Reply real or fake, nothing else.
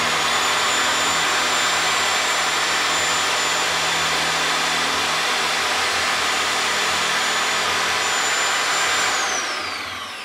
real